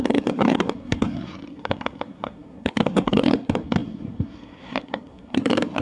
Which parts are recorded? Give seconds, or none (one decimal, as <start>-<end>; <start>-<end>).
none